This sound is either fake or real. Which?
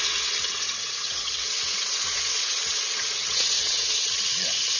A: fake